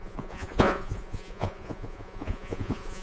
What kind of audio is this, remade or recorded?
remade